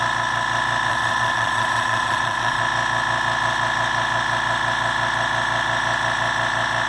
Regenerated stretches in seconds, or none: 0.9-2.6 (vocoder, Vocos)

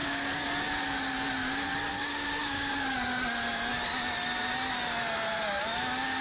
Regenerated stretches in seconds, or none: 0.0-0.5 (codec, DAC); 1.9-2.7

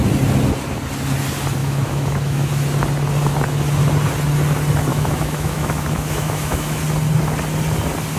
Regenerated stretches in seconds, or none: 1.6-2.5 (autoencoder, DAC-VAE); 4.9-6.8